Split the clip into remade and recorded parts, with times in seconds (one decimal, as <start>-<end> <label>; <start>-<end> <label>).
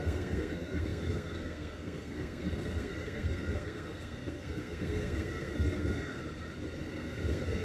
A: 0.0-6.2 remade; 6.2-6.9 recorded; 6.9-7.6 remade